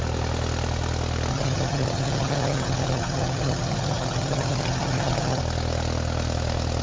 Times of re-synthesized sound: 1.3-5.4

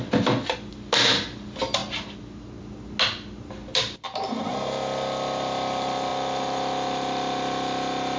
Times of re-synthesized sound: none

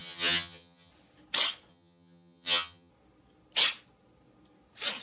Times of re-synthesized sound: 0.0-0.9; 1.7-2.9

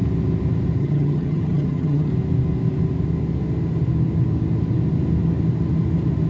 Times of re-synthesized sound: 0.8-2.1

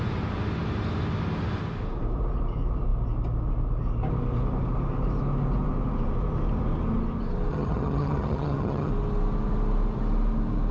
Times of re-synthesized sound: 7.5-8.9

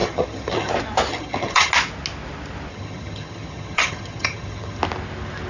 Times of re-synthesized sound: 0.0-0.7; 1.1-1.7; 2.7-4.8

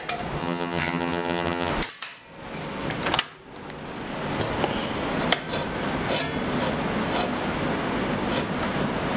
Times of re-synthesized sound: 0.4-1.7

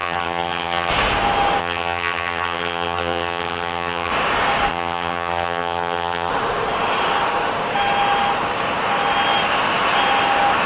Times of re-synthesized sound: 0.0-0.9; 1.6-4.1; 4.7-6.3